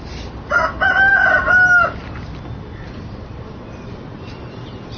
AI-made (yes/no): no